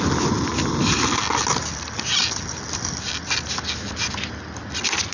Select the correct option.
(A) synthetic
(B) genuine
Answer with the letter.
B